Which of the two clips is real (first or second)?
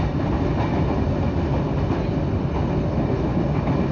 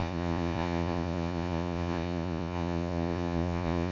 first